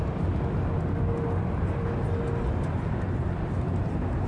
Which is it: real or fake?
real